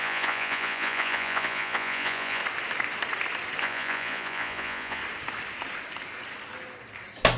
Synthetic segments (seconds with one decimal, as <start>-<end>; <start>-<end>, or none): 0.0-2.4; 3.6-5.0